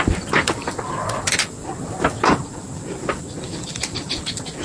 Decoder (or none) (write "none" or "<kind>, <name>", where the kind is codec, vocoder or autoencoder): none